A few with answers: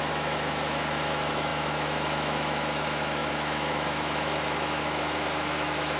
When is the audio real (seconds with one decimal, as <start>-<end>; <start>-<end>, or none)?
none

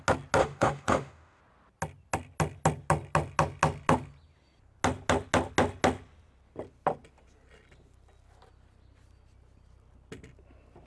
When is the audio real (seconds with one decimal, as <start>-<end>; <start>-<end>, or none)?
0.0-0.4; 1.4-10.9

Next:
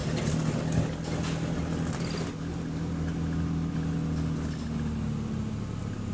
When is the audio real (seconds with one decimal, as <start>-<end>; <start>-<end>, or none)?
0.0-6.1